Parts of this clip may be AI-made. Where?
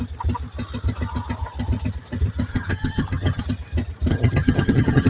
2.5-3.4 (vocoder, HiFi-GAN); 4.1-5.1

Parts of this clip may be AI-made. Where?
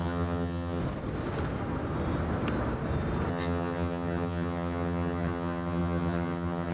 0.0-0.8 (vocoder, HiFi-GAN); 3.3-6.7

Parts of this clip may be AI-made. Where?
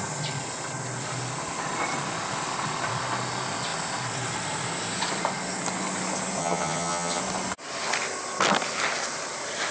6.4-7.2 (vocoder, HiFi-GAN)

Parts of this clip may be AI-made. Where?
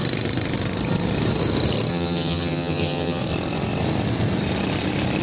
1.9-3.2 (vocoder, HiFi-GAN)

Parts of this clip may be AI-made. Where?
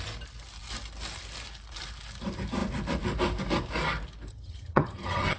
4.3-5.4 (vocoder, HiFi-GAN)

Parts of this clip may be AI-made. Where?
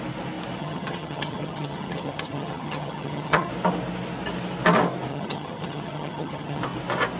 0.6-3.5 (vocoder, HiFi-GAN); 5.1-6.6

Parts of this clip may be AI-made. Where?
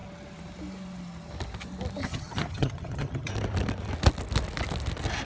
2.0-3.3 (vocoder, HiFi-GAN)